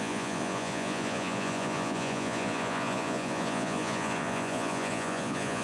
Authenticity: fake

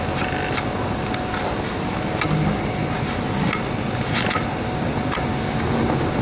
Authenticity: real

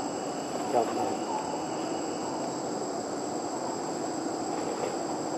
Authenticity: real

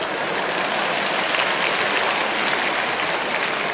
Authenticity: real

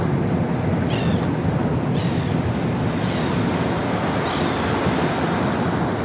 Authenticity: real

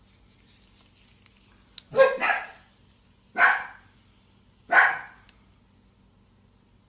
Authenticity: real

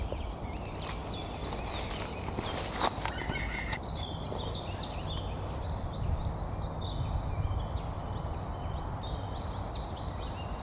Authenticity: real